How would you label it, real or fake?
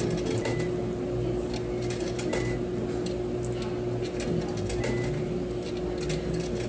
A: real